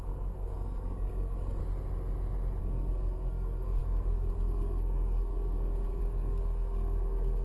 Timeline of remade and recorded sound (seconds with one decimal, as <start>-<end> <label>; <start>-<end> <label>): 0.0-1.6 remade; 1.6-2.6 recorded; 2.6-7.4 remade